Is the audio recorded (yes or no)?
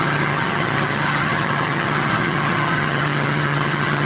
no